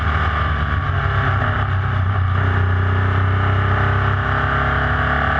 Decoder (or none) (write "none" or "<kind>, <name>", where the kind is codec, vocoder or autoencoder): none